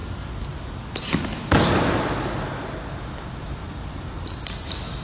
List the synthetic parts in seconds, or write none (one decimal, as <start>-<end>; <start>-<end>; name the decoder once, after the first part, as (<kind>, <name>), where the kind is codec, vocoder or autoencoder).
3.6-4.3 (vocoder, BigVGAN v2)